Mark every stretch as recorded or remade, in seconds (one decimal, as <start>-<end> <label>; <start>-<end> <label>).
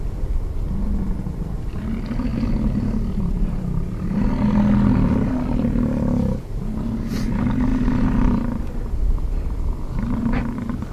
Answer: 0.0-10.9 recorded